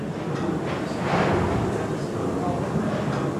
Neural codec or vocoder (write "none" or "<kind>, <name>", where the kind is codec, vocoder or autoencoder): none